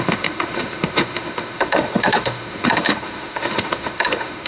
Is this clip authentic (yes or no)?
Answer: no